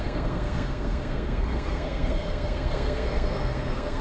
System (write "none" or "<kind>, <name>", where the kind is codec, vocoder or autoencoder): codec, SNAC